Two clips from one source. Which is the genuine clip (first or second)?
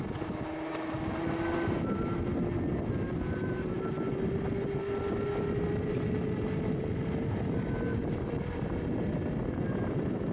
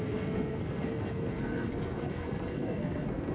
first